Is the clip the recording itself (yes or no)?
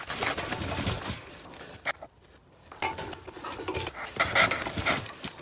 yes